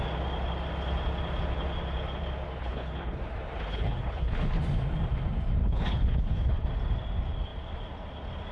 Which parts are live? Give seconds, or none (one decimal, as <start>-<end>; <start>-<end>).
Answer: 0.0-2.6; 3.2-3.7; 4.6-5.6; 6.7-8.5

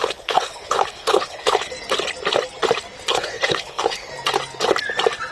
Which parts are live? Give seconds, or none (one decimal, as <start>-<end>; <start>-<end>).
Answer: 1.7-3.1; 4.1-5.3

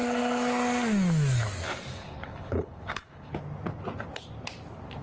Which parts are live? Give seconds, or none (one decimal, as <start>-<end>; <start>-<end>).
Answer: 0.0-1.9; 3.3-5.0

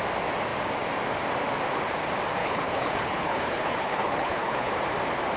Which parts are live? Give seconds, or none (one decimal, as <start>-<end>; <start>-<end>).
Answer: 0.0-2.4; 4.7-5.4

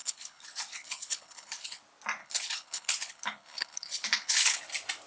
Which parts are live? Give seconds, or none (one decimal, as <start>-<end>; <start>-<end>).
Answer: 1.8-2.2; 4.6-5.1

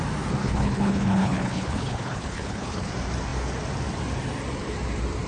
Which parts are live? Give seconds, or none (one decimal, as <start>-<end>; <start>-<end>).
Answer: 0.0-0.4; 2.9-5.3

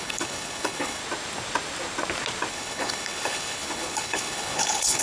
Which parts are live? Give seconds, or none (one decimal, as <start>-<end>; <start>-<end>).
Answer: 1.0-2.5